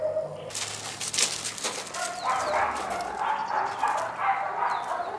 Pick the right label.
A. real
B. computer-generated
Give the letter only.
A